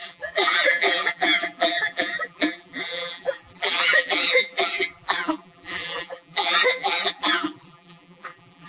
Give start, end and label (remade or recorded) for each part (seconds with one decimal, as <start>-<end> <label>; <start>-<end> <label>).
0.0-8.7 remade